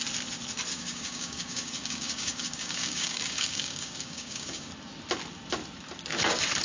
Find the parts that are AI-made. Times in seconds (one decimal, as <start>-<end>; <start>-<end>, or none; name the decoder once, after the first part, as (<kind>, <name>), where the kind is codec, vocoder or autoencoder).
0.7-4.7 (codec, DAC)